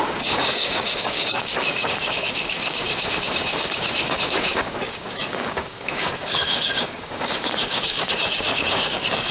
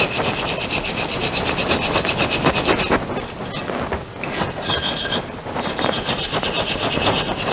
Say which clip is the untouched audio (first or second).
second